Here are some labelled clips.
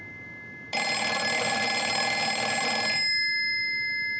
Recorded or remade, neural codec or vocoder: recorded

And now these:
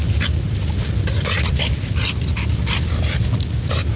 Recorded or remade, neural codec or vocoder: recorded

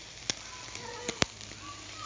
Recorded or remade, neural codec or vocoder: recorded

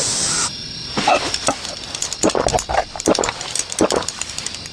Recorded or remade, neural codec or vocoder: remade, vocoder, BigVGAN v2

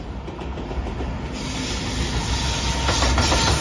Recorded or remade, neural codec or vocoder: recorded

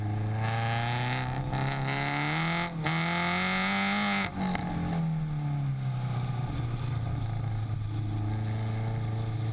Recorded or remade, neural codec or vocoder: recorded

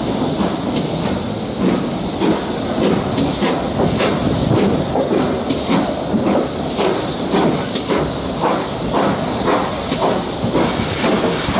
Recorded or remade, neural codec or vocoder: recorded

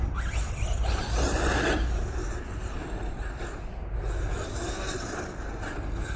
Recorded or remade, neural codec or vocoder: recorded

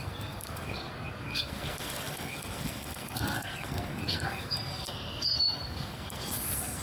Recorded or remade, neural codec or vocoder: remade, codec, SNAC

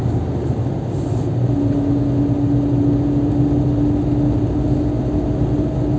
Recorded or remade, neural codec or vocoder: recorded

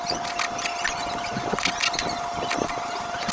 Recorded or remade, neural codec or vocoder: recorded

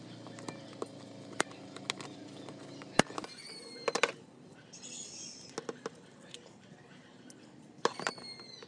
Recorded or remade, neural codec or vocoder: recorded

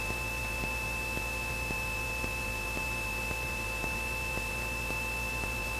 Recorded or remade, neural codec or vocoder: recorded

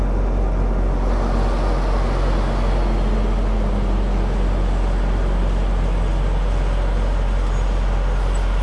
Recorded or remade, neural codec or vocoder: recorded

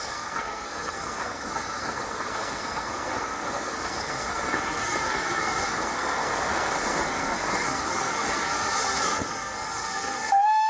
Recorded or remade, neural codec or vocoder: remade, codec, SNAC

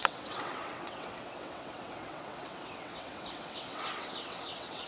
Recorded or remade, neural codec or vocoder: remade, vocoder, WaveNeXt